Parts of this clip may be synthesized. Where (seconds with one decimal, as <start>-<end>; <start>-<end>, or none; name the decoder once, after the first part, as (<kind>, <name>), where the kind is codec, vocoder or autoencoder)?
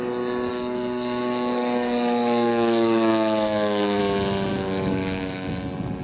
0.5-4.0 (codec, DAC); 4.5-5.5